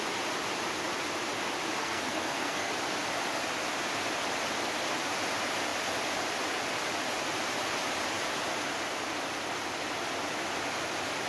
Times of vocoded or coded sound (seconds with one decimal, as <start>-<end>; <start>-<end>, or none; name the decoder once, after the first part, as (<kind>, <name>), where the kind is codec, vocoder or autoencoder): 1.8-2.7 (codec, SNAC)